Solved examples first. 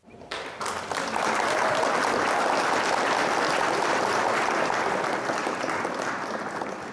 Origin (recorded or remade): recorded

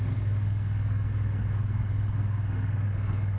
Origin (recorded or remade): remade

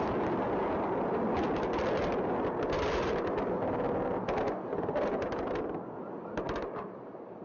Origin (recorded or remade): recorded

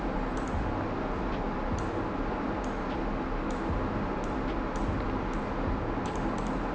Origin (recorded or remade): recorded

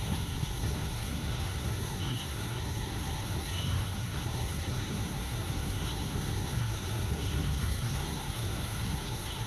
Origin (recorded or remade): remade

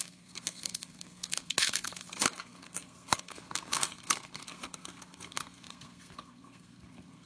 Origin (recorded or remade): remade